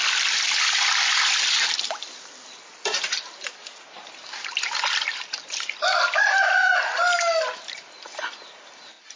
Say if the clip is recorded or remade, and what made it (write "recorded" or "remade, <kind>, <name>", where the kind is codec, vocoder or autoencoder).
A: recorded